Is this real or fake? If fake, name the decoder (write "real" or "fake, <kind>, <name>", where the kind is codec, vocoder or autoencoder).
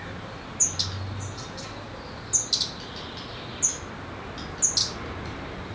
real